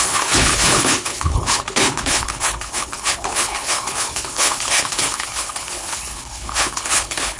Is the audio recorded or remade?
remade